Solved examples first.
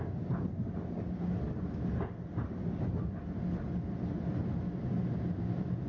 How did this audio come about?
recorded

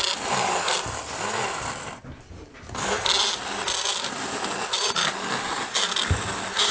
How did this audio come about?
recorded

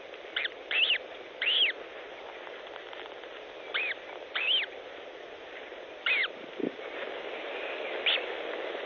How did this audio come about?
recorded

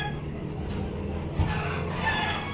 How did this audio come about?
recorded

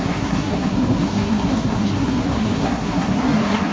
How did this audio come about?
remade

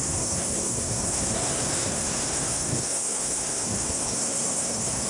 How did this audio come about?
remade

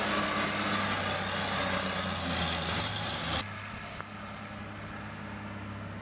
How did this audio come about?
recorded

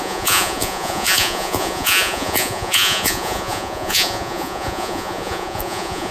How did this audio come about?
remade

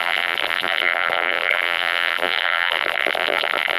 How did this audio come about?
remade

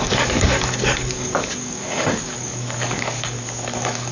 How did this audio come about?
remade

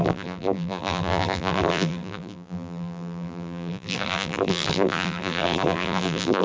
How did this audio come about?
remade